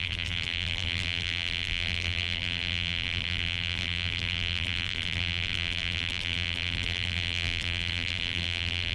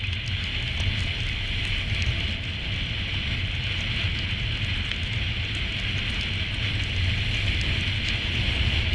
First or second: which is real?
second